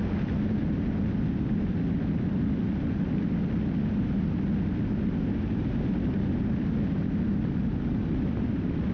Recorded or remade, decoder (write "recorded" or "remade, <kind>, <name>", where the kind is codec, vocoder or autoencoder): recorded